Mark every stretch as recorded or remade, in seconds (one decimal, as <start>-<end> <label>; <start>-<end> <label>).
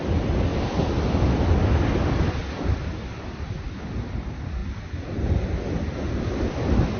0.0-7.0 recorded